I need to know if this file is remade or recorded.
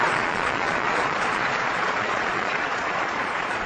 remade